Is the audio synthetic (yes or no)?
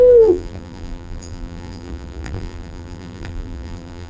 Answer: yes